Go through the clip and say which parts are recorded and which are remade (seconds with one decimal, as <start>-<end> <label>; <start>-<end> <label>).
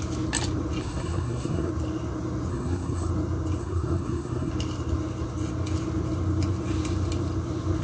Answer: 0.0-0.8 recorded; 0.8-1.7 remade; 1.7-2.5 recorded; 2.5-3.1 remade; 3.1-3.6 recorded; 3.6-4.5 remade; 4.5-7.8 recorded